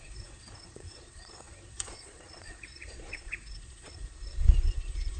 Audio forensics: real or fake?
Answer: fake